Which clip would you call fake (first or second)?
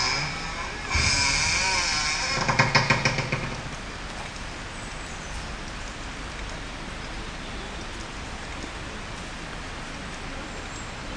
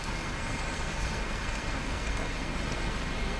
second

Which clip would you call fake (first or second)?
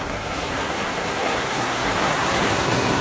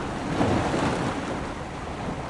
first